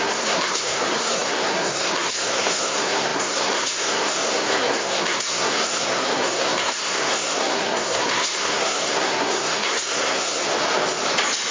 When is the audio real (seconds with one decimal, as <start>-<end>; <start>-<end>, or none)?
10.4-11.5